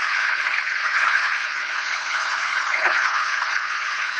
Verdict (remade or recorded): remade